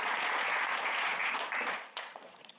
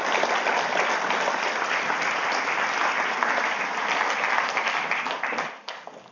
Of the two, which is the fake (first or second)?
first